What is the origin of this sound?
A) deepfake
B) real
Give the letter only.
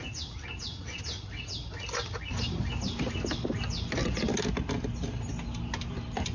B